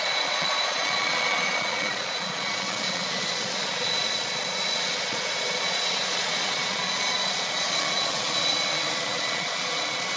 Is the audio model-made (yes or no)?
yes